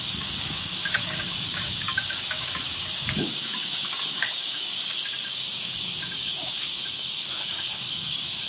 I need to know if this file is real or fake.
fake